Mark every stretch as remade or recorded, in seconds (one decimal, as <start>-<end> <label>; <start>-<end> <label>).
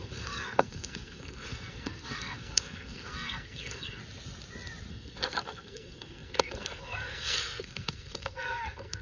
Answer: 0.0-4.0 remade; 4.0-4.9 recorded; 4.9-9.0 remade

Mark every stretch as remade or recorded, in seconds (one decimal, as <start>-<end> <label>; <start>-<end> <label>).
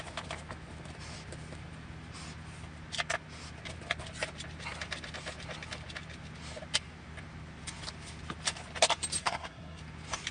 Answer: 0.0-9.2 recorded; 9.2-9.8 remade; 9.8-10.3 recorded